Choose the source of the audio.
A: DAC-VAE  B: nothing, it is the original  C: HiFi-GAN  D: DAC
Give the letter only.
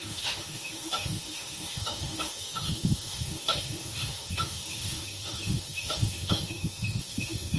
A